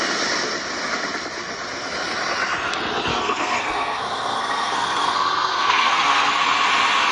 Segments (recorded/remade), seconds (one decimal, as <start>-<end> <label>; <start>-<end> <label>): 0.0-3.1 recorded; 3.1-6.3 remade; 6.3-7.1 recorded